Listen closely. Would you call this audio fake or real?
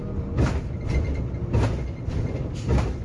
real